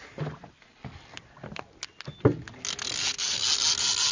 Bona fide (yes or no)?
yes